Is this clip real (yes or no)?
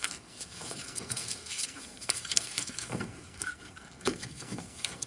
no